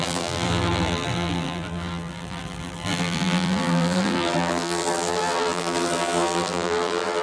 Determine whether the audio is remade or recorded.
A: remade